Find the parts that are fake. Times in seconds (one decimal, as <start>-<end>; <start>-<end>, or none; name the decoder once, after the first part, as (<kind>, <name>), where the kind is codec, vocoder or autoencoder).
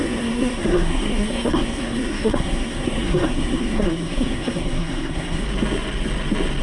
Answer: 0.0-5.4 (codec, SNAC)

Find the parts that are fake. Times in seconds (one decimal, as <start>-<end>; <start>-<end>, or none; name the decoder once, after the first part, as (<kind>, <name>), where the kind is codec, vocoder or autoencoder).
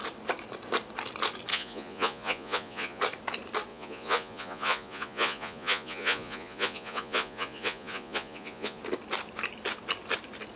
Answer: 1.5-3.0 (vocoder, Vocos); 3.7-8.8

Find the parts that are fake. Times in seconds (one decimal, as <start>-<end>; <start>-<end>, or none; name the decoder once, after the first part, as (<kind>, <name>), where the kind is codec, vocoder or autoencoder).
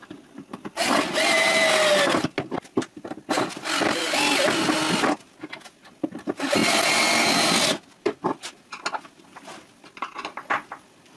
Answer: none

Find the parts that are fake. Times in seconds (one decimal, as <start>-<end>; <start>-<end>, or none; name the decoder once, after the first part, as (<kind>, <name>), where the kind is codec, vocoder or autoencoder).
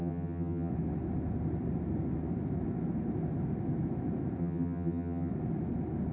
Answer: 0.0-0.7 (vocoder, HiFi-GAN); 4.4-5.3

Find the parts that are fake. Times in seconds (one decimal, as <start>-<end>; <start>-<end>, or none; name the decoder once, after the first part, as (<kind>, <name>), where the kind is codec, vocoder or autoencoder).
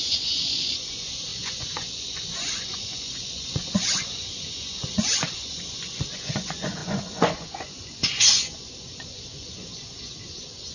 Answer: 0.0-10.7 (vocoder, Vocos)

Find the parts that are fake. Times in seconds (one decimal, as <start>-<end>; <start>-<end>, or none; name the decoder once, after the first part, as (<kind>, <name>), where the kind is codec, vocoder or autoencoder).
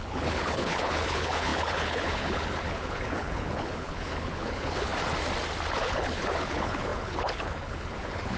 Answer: 0.0-4.9 (codec, HILCodec); 5.7-8.4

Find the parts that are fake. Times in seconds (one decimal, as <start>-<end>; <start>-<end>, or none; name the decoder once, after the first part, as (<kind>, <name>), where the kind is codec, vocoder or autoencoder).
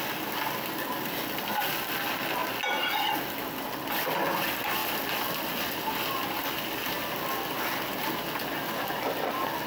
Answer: none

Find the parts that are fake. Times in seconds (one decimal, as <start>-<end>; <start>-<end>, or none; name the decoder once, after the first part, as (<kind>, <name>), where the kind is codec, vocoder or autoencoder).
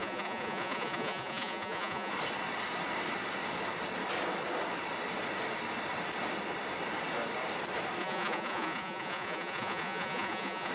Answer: 0.0-2.1 (vocoder, Vocos); 8.0-10.7